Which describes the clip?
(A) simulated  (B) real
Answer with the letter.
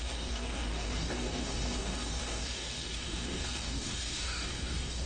A